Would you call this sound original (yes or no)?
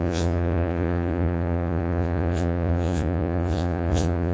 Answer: no